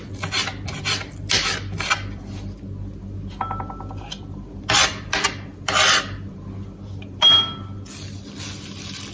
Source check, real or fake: real